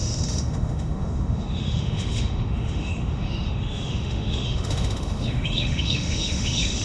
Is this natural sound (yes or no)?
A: no